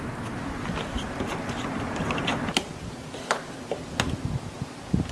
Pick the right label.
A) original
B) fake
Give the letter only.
A